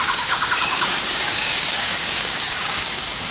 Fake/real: fake